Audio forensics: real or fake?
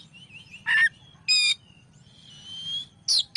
real